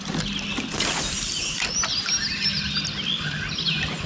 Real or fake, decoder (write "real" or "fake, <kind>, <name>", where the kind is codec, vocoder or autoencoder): real